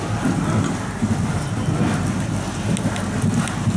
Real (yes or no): yes